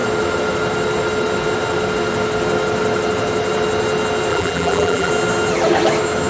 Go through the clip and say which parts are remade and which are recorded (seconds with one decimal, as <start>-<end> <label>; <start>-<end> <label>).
0.0-4.3 recorded; 4.3-5.1 remade; 5.1-6.3 recorded